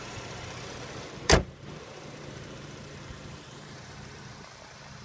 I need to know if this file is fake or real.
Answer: fake